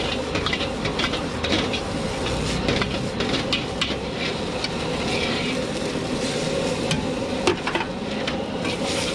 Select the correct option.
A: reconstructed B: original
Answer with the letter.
B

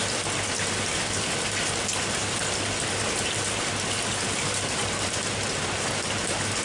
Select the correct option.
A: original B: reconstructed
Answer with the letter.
A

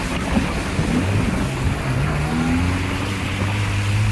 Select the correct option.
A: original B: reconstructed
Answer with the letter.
A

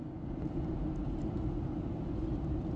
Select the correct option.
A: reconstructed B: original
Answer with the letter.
B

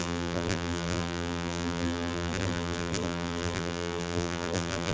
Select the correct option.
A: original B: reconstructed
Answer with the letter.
B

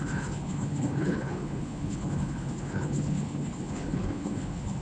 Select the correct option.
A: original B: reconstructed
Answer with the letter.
B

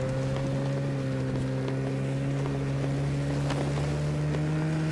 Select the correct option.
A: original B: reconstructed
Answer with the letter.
A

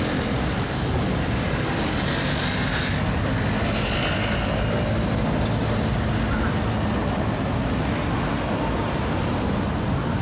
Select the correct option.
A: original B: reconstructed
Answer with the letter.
A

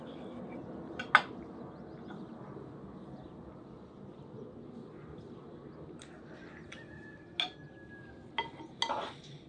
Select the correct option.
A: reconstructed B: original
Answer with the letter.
B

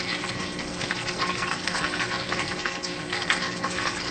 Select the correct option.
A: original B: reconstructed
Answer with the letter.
B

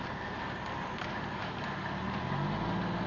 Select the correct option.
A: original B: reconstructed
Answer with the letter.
A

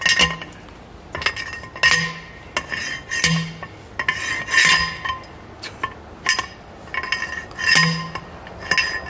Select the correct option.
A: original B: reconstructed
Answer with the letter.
A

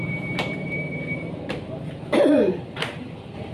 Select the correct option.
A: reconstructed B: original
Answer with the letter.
A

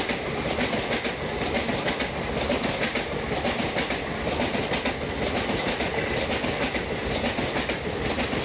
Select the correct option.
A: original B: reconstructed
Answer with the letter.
A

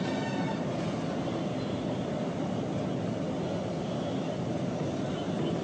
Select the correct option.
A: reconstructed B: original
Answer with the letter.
B